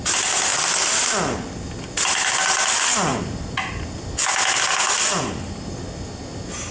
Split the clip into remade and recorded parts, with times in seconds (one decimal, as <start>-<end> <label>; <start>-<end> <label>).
0.0-6.7 recorded